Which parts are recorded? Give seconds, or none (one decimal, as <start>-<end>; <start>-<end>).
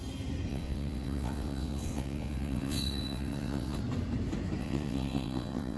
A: 0.0-0.5; 3.8-4.6